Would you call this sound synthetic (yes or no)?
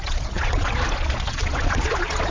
yes